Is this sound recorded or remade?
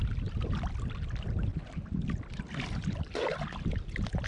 recorded